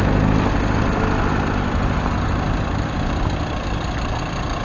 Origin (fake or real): real